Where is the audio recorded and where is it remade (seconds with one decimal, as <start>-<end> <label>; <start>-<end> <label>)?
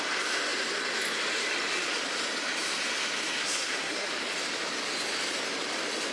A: 0.0-3.4 recorded; 3.4-4.1 remade; 4.1-6.1 recorded